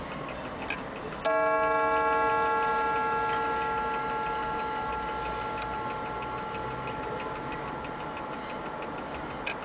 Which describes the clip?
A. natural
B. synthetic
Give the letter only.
A